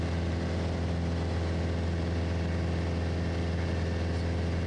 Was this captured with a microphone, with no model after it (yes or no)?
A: yes